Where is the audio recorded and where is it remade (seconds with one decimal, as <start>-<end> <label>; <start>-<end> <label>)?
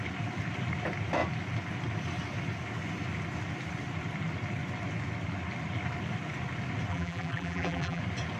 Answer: 0.0-6.9 recorded; 6.9-8.0 remade; 8.0-8.4 recorded